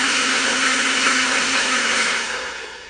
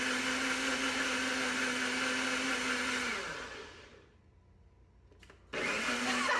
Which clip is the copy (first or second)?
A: first